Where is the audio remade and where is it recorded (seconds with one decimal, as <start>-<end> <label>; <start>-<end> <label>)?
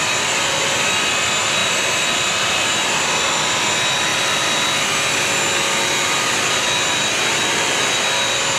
0.0-8.6 recorded